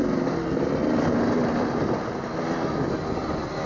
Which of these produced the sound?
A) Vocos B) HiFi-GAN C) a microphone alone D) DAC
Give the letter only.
C